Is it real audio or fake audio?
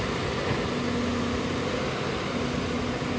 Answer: real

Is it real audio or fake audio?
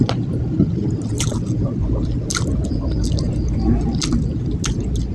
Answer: real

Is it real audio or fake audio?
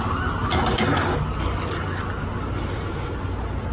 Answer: real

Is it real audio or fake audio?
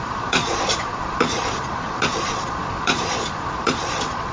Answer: fake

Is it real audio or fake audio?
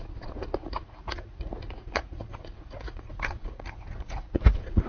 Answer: fake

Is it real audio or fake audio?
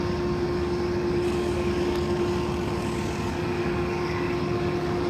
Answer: fake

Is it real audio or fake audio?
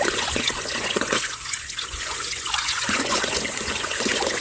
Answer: fake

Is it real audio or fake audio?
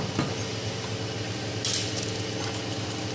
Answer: real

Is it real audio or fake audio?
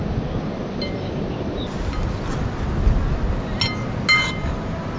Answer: real